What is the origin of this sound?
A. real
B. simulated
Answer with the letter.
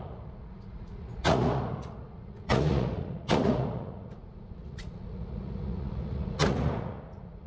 B